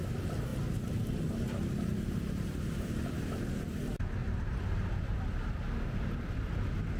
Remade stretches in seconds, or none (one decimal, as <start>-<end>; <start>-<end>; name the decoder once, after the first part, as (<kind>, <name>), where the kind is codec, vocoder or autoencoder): 1.9-3.3 (vocoder, BigVGAN v2); 4.2-6.5